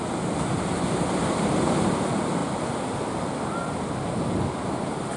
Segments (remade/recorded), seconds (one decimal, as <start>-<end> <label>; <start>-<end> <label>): 0.0-5.2 recorded

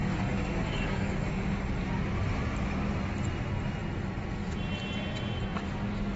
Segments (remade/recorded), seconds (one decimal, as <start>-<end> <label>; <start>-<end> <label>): 0.0-1.7 remade; 1.7-6.2 recorded

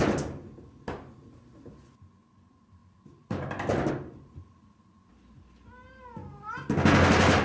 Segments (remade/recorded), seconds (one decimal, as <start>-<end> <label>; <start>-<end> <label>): 0.0-2.8 recorded; 2.8-3.9 remade; 3.9-7.4 recorded

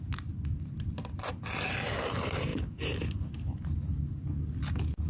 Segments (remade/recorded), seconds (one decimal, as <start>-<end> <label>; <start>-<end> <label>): 0.0-5.1 recorded

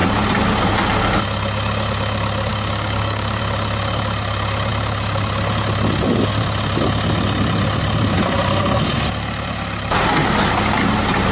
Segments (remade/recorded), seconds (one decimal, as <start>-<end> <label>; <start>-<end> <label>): 0.0-2.5 recorded; 2.5-3.4 remade; 3.4-11.3 recorded